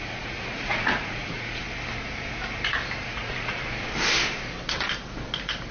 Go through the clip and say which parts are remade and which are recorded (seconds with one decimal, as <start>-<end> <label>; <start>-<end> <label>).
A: 0.0-1.6 remade; 1.6-3.0 recorded; 3.0-3.6 remade; 3.6-5.7 recorded